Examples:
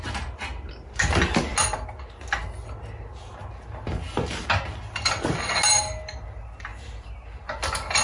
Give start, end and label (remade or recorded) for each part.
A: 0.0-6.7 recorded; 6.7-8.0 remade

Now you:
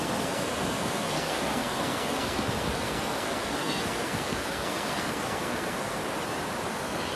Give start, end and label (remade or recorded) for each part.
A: 0.0-6.0 remade; 6.0-6.7 recorded; 6.7-7.2 remade

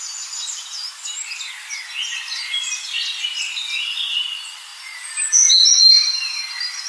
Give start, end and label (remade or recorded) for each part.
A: 0.0-6.9 recorded

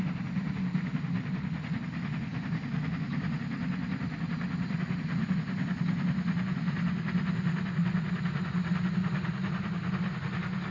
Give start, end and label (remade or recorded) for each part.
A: 0.0-10.7 recorded

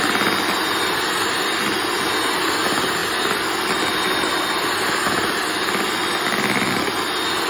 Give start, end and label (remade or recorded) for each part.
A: 0.0-7.5 recorded

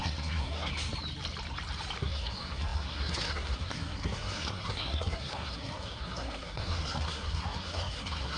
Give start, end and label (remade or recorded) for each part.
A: 0.0-0.7 remade; 0.7-2.0 recorded; 2.0-8.4 remade